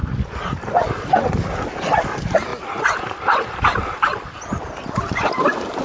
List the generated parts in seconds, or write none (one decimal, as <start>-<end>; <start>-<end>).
none